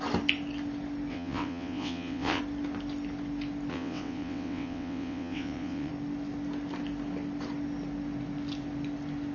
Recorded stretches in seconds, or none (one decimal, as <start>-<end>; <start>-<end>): 0.0-1.1; 2.4-3.7; 5.9-9.3

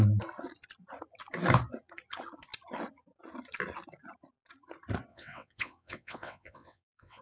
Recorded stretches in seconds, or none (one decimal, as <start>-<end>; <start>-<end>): 0.0-5.1